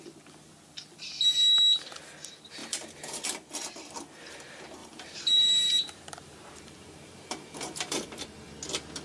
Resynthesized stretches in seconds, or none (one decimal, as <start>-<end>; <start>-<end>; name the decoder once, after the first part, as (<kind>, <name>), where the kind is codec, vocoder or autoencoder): 2.6-3.2 (vocoder, BigVGAN v2); 4.8-8.5